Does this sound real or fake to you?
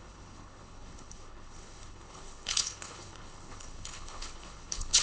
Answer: fake